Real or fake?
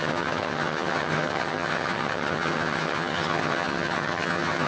fake